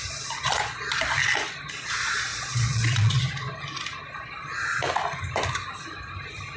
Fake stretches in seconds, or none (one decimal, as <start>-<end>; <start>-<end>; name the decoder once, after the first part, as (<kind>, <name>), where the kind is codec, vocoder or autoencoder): 2.3-3.2 (vocoder, Vocos)